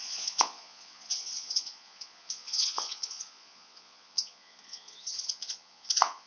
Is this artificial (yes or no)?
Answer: yes